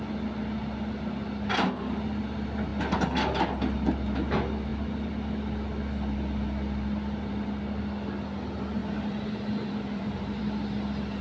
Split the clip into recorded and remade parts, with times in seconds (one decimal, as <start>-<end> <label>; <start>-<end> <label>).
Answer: 0.0-8.8 recorded; 8.8-10.4 remade; 10.4-11.2 recorded